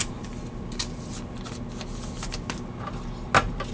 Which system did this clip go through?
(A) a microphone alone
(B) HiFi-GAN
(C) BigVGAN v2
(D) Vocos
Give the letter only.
A